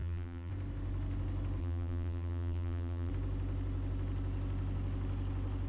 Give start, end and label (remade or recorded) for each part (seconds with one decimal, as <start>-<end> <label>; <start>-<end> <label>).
0.0-0.5 remade; 0.5-1.6 recorded; 1.6-3.1 remade; 3.1-5.7 recorded